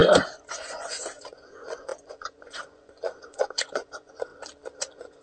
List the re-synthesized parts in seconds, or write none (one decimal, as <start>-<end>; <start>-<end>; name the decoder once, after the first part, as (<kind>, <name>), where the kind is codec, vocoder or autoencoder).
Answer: 0.0-4.3 (vocoder, Vocos); 4.8-5.2